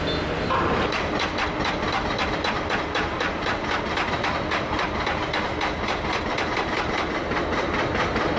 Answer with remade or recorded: recorded